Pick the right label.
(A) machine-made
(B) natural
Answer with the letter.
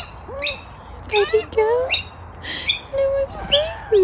B